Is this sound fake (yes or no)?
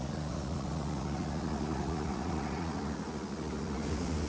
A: yes